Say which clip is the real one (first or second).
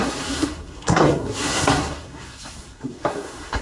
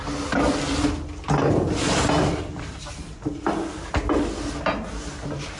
second